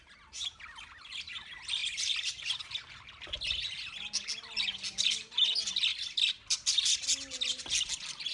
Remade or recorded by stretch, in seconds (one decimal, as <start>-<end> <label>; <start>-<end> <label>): 0.0-5.9 recorded; 5.9-7.1 remade; 7.1-8.3 recorded